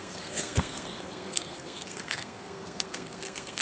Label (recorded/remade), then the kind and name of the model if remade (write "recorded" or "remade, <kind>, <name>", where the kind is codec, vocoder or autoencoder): remade, codec, SNAC